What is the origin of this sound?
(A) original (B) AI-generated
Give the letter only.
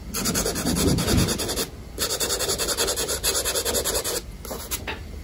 A